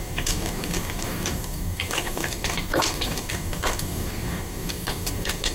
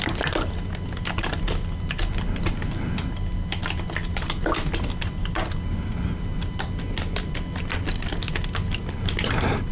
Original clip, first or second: second